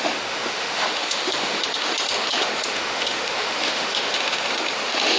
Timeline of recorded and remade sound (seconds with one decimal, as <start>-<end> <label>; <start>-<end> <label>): 0.0-5.2 remade